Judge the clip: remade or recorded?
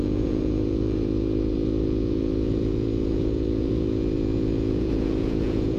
remade